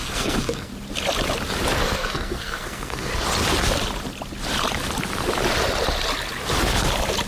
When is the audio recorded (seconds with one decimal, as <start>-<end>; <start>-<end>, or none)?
0.7-1.8; 3.1-7.3